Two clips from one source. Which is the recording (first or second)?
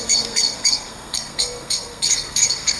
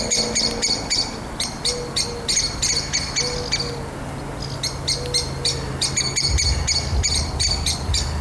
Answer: second